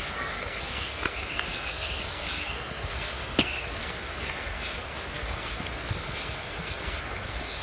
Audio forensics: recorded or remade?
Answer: remade